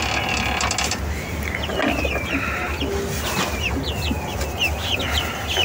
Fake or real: real